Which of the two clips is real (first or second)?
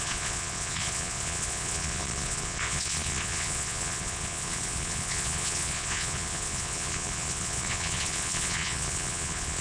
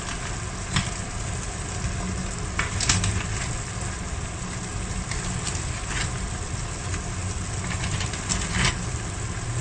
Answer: second